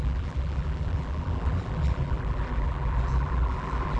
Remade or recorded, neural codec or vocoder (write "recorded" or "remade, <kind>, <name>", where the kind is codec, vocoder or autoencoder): remade, vocoder, BigVGAN v2